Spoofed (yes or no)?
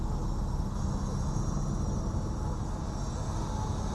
no